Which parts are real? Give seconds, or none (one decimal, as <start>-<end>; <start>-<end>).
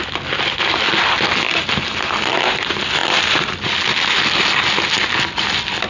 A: 0.0-5.9